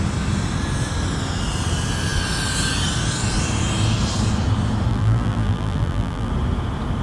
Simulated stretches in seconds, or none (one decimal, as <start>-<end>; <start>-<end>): 4.9-6.3